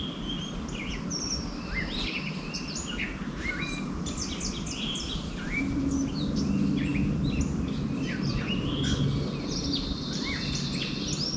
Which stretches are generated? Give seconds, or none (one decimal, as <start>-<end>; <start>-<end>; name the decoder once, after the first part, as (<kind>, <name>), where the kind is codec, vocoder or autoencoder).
6.9-7.4 (vocoder, BigVGAN v2)